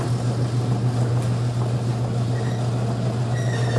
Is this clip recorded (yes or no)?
yes